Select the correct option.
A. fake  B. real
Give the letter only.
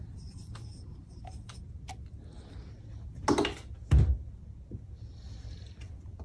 B